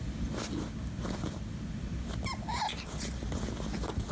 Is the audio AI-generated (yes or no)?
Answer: no